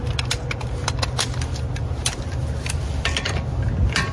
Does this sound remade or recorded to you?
recorded